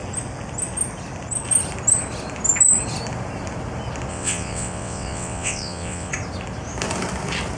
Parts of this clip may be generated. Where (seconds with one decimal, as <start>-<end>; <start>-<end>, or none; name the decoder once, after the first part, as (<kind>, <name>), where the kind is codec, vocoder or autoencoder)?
4.1-6.1 (vocoder, WaveNeXt)

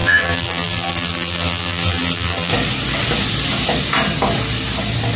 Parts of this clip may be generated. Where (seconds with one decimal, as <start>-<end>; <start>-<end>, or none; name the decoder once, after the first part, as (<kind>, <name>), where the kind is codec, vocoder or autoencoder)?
0.0-2.5 (vocoder, BigVGAN v2)

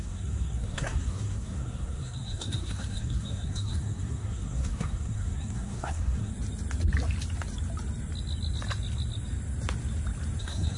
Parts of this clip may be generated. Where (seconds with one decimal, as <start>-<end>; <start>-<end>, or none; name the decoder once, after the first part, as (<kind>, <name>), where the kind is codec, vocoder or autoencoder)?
0.0-6.3 (codec, SNAC); 10.4-10.8

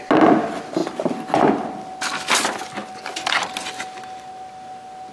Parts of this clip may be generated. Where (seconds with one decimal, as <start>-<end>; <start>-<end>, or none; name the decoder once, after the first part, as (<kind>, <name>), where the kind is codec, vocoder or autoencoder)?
none